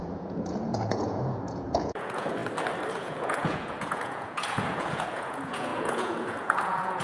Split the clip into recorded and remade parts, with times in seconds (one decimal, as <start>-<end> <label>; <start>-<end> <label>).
0.0-2.4 remade; 2.4-2.9 recorded; 2.9-7.0 remade